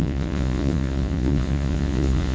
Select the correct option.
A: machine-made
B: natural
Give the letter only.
A